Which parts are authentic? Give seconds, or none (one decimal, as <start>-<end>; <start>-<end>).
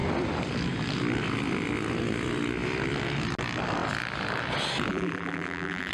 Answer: 0.0-4.9